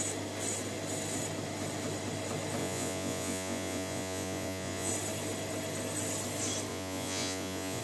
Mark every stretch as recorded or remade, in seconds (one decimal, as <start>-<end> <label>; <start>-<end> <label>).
0.0-2.6 recorded; 2.6-4.9 remade; 4.9-6.7 recorded; 6.7-7.8 remade